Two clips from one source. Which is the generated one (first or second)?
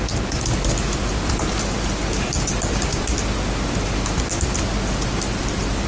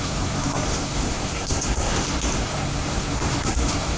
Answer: second